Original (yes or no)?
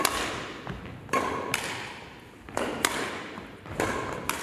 yes